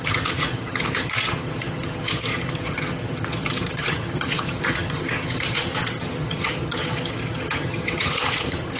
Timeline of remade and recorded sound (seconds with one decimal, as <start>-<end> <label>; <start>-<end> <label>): 0.0-8.8 remade